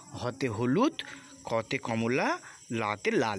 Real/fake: real